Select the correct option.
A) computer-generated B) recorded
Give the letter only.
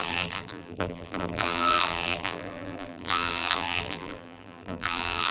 A